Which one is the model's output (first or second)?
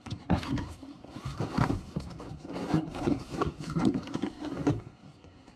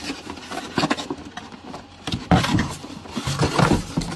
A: first